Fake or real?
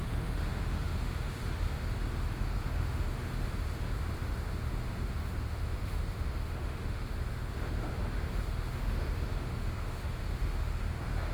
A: fake